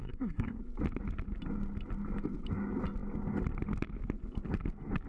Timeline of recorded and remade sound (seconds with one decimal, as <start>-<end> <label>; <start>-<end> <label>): 0.0-0.6 remade; 0.6-5.1 recorded

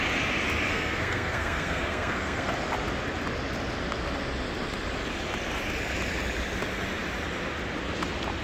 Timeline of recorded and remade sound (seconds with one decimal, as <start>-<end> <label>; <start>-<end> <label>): 0.0-0.7 recorded; 0.7-2.5 remade; 2.5-8.4 recorded

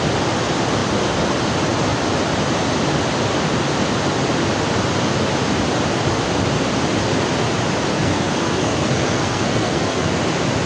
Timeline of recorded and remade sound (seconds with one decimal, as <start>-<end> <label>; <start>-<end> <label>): 0.0-7.9 recorded; 7.9-10.1 remade; 10.1-10.7 recorded

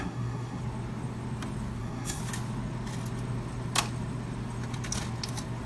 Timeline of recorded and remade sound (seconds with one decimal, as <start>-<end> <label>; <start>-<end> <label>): 0.0-0.6 remade; 0.6-1.8 recorded; 1.8-2.2 remade; 2.2-5.7 recorded

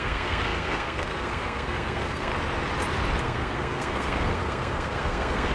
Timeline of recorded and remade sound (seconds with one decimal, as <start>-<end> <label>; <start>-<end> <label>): 0.0-2.3 remade; 2.3-3.2 recorded; 3.2-5.5 remade

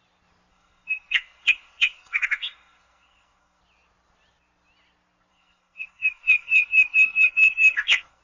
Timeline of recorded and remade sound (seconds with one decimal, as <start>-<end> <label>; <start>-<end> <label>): 0.0-0.5 recorded; 0.5-3.6 remade; 3.6-5.3 recorded; 5.3-8.2 remade

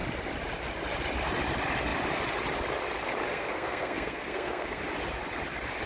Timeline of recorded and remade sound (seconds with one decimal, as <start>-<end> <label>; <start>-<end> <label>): 0.0-3.3 recorded; 3.3-4.8 remade; 4.8-5.9 recorded

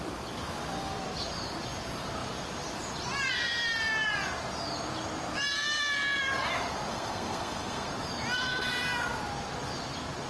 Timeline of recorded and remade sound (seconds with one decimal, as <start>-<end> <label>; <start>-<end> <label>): 0.0-6.9 recorded; 6.9-7.9 remade; 7.9-10.3 recorded